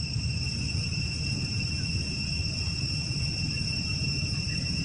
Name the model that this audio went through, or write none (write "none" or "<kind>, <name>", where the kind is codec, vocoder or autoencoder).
vocoder, BigVGAN v2